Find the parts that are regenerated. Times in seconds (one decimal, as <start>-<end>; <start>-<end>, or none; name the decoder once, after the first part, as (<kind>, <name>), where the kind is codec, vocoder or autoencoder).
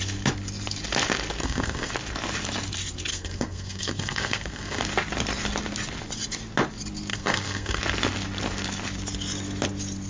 1.4-1.9 (codec, SNAC); 3.1-4.8; 7.1-7.8